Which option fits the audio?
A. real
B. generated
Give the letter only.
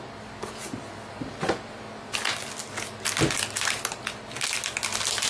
A